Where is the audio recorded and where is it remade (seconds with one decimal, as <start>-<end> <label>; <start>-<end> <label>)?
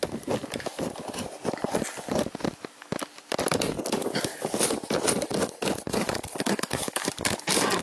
0.0-4.0 recorded; 4.0-4.7 remade; 4.7-5.9 recorded; 5.9-7.8 remade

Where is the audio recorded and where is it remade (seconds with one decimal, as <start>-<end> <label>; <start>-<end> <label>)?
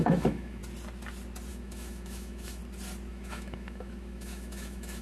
0.0-0.6 remade; 0.6-1.5 recorded; 1.5-2.6 remade; 2.6-3.1 recorded; 3.1-5.0 remade